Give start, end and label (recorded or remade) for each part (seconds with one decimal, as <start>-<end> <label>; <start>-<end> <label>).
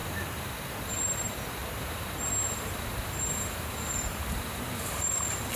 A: 0.0-1.6 recorded; 1.6-5.0 remade; 5.0-5.6 recorded